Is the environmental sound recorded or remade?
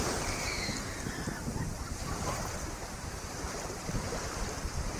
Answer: recorded